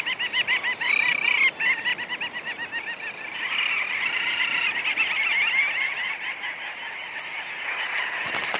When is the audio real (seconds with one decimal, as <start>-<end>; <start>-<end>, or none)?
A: 1.9-4.8